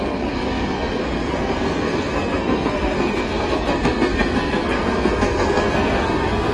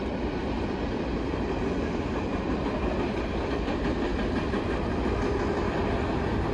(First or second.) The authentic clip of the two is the second